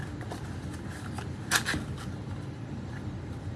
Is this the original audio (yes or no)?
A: yes